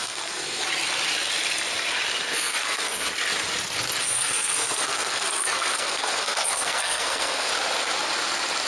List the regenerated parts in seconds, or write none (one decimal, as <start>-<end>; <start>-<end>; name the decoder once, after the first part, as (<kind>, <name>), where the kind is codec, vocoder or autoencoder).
0.0-0.6 (codec, SNAC); 2.3-3.1; 4.0-7.5